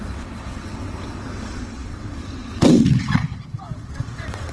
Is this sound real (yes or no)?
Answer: no